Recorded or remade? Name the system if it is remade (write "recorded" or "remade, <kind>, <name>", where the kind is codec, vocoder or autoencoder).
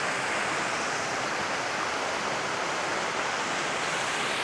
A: recorded